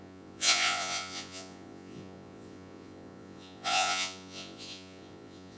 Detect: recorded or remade remade